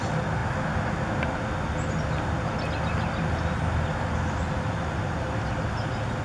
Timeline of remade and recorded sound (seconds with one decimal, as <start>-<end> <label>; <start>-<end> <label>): 0.0-0.4 remade; 0.4-4.1 recorded; 4.1-6.2 remade